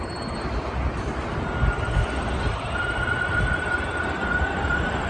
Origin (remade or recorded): recorded